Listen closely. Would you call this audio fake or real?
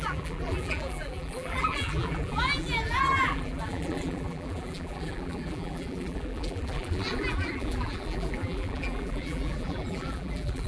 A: fake